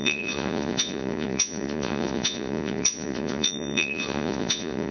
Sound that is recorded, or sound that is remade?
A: remade